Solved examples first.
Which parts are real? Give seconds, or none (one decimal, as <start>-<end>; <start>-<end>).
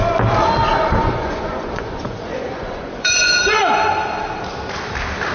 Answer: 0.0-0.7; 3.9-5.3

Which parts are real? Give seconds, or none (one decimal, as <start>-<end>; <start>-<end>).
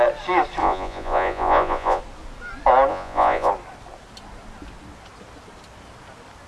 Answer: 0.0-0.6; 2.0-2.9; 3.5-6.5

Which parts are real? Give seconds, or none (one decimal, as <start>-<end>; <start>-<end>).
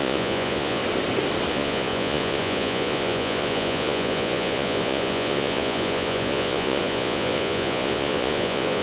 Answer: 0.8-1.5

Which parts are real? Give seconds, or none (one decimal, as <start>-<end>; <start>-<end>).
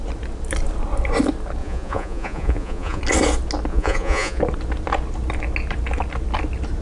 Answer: 0.0-1.6; 3.0-3.7; 4.4-6.8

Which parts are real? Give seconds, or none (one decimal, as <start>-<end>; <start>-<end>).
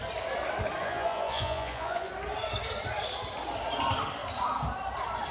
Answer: 0.0-0.8; 2.1-5.3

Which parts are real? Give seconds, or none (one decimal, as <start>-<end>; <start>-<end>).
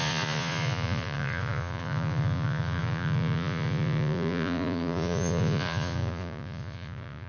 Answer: none